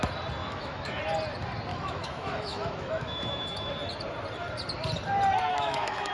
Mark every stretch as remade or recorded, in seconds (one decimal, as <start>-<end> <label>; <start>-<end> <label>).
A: 0.0-0.4 recorded; 0.4-1.0 remade; 1.0-1.7 recorded; 1.7-3.7 remade; 3.7-5.5 recorded; 5.5-6.1 remade

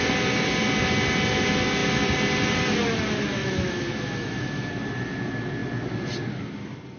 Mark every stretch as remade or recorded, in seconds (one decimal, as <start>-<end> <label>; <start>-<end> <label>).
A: 0.0-3.4 recorded; 3.4-4.7 remade; 4.7-7.0 recorded

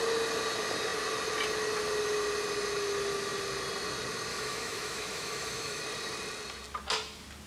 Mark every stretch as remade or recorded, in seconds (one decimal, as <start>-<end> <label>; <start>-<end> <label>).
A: 0.0-4.3 recorded; 4.3-5.8 remade; 5.8-7.5 recorded

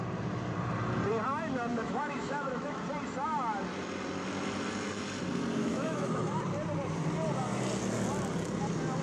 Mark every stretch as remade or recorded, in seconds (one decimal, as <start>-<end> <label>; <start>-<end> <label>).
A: 0.0-1.7 recorded; 1.7-2.8 remade; 2.8-5.6 recorded; 5.6-6.4 remade; 6.4-9.0 recorded

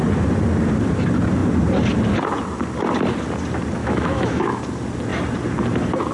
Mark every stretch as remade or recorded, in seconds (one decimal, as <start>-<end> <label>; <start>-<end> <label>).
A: 0.0-3.8 recorded; 3.8-4.6 remade; 4.6-6.1 recorded

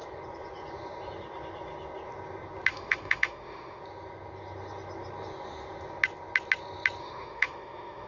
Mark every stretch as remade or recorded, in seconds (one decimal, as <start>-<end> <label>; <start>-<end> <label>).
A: 0.0-2.7 recorded; 2.7-3.8 remade; 3.8-7.0 recorded; 7.0-8.1 remade